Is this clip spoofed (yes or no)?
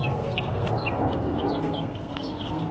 yes